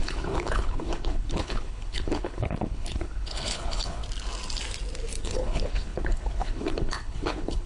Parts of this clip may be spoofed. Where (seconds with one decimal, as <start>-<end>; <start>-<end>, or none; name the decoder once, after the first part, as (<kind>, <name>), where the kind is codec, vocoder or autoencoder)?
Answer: 0.0-4.0 (codec, HILCodec); 5.2-7.7